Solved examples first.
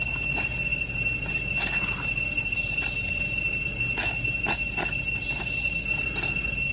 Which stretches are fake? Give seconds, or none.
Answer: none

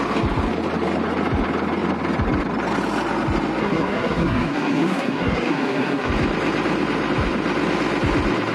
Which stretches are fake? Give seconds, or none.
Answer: 3.6-6.1 (codec, SNAC)

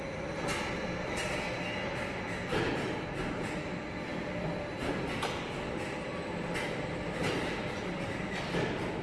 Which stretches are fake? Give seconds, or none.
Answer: none